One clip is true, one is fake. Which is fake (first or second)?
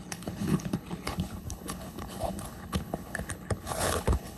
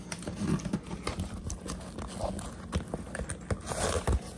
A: first